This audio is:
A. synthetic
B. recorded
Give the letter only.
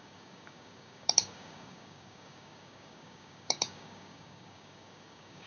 A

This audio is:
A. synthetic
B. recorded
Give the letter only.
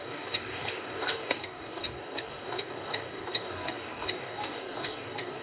A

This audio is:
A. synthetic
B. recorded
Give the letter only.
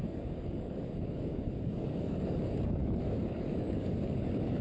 A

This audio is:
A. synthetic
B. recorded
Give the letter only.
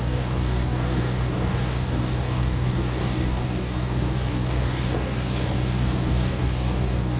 A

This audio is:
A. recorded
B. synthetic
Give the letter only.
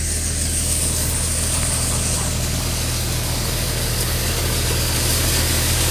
B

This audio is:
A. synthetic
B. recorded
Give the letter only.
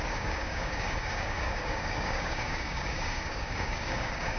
A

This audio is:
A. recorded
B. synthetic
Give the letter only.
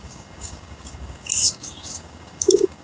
B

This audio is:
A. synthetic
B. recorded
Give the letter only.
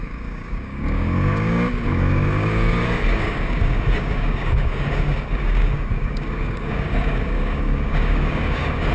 A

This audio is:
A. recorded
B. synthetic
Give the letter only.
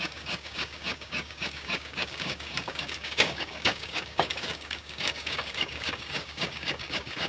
B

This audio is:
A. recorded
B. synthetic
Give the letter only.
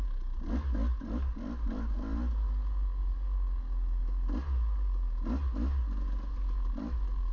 A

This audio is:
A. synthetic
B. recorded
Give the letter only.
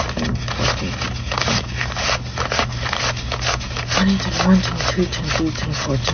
B